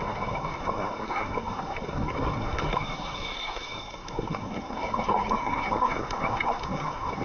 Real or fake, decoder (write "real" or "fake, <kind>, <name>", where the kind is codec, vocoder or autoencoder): fake, codec, SNAC